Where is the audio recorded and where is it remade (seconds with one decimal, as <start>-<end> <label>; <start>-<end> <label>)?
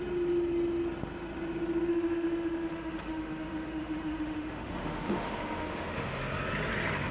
0.0-1.9 recorded; 1.9-6.2 remade; 6.2-7.1 recorded